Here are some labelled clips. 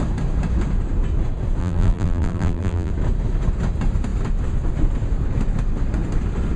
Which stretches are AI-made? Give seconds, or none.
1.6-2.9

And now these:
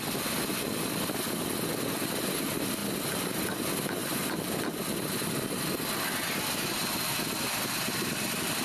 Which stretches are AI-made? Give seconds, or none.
4.0-4.6

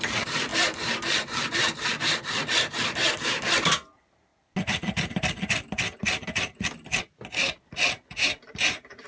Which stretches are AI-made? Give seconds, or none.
0.0-4.3; 8.1-9.1

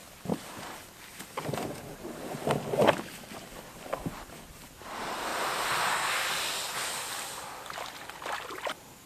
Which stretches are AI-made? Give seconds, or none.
0.0-5.3; 7.3-9.1

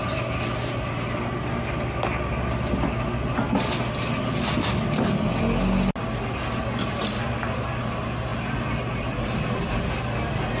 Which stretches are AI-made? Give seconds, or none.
none

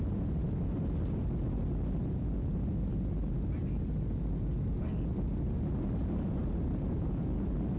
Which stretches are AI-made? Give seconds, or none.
6.0-7.1